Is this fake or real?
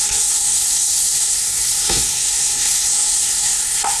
fake